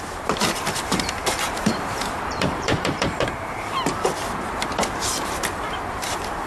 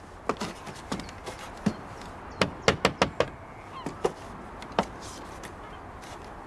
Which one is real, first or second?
second